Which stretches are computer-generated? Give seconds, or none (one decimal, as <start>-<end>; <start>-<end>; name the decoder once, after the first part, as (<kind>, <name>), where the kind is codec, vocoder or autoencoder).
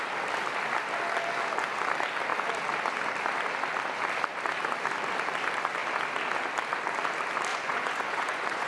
7.5-8.7 (vocoder, Vocos)